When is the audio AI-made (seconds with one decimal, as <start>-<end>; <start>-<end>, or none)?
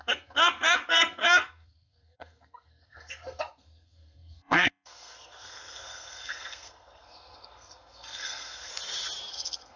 0.0-8.7; 9.3-9.8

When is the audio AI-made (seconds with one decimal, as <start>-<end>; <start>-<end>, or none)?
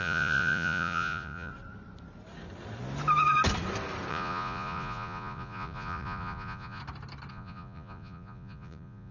0.0-1.5; 4.1-6.8; 7.3-9.1